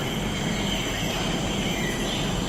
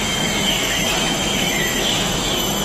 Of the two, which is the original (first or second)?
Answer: first